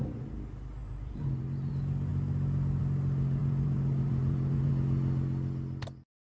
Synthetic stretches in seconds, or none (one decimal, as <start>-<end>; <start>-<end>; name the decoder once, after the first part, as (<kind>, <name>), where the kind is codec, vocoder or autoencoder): 0.8-1.7 (vocoder, BigVGAN v2); 3.4-4.7